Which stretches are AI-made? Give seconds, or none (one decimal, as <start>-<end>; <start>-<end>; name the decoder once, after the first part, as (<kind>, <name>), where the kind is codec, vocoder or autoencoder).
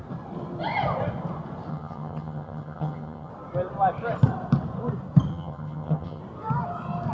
1.7-3.3 (vocoder, HiFi-GAN); 5.3-6.2